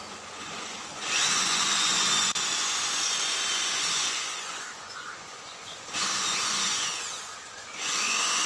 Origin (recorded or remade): remade